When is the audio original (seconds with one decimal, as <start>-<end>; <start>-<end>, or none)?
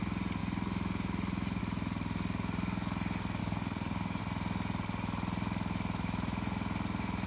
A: 0.0-3.4; 4.2-7.3